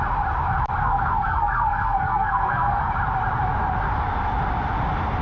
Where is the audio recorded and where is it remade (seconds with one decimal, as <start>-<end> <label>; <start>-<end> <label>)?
0.0-0.8 recorded; 0.8-2.9 remade; 2.9-5.2 recorded